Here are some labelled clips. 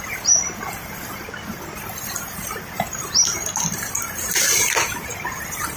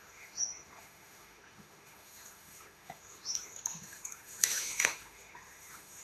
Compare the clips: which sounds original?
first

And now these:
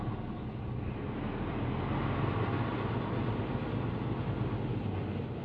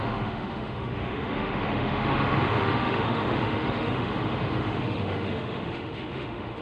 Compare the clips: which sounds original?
first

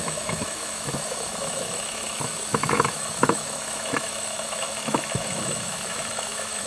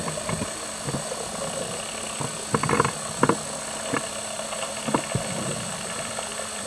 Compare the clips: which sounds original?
second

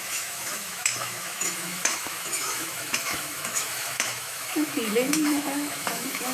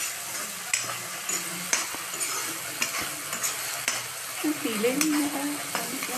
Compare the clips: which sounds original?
second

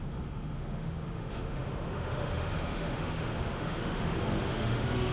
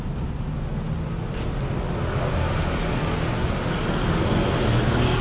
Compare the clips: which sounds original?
second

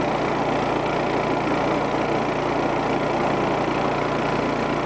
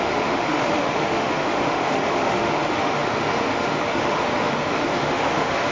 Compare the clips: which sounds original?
first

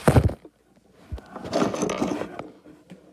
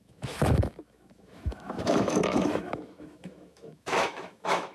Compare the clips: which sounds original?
first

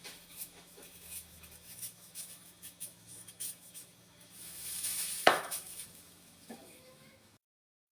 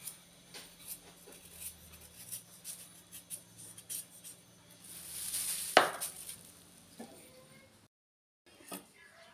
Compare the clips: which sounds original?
second